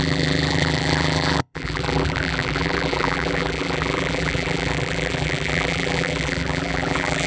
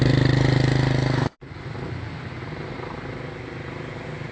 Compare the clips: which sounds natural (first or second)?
second